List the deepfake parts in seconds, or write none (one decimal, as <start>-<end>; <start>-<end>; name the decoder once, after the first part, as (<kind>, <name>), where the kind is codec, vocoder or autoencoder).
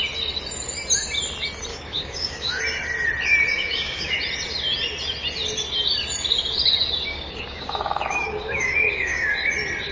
1.7-2.6 (codec, DAC); 3.5-4.2; 7.1-9.5